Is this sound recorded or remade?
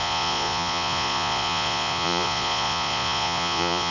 remade